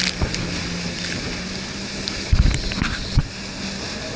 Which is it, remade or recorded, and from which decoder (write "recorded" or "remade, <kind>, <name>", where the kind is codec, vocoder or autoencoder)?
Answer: recorded